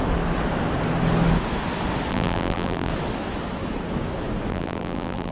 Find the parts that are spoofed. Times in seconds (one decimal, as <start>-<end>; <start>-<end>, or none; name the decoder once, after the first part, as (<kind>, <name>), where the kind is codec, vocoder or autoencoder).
2.1-2.9 (vocoder, BigVGAN v2); 4.5-5.3